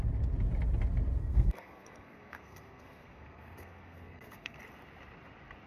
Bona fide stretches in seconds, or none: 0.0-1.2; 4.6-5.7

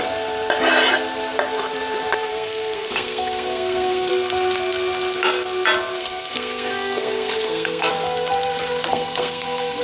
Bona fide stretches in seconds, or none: 0.0-2.3; 4.1-6.0; 7.9-8.9